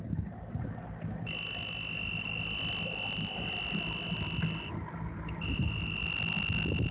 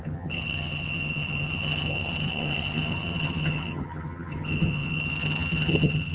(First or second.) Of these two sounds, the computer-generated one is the second